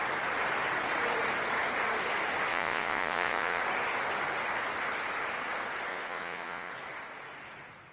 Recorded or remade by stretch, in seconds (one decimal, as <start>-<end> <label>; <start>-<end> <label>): 0.0-2.5 recorded; 2.5-3.6 remade; 3.6-5.9 recorded; 5.9-6.7 remade; 6.7-7.9 recorded